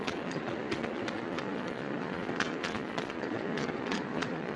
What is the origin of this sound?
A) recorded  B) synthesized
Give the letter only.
B